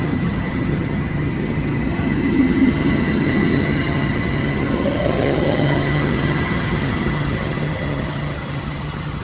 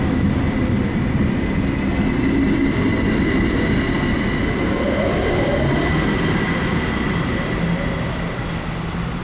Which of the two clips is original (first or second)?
second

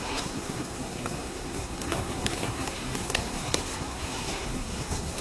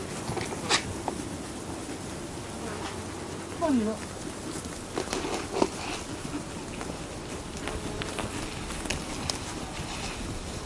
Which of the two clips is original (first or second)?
second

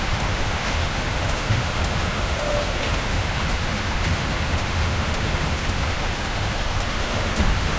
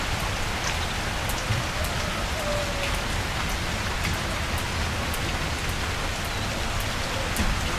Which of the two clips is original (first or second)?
second